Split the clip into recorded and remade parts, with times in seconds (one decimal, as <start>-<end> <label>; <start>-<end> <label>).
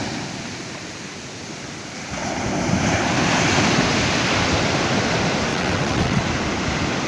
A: 0.0-5.5 recorded; 5.5-6.2 remade; 6.2-7.1 recorded